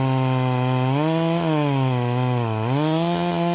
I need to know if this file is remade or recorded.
recorded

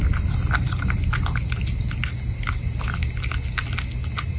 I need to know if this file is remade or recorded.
recorded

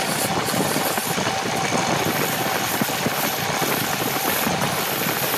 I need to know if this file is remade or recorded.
recorded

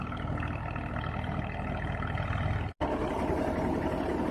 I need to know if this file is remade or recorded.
recorded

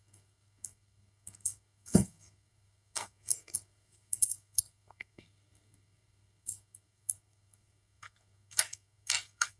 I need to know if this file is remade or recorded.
remade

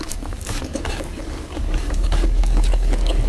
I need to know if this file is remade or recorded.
remade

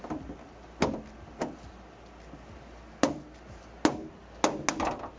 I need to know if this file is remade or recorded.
recorded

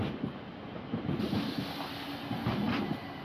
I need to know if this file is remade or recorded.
recorded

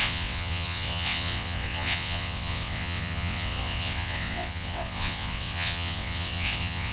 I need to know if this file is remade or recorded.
remade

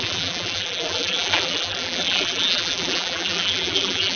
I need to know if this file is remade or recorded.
remade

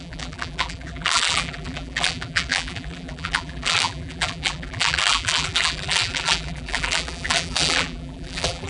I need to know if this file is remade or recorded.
remade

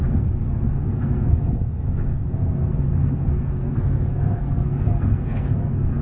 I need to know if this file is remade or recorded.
remade